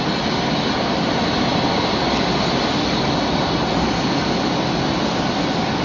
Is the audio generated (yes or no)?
no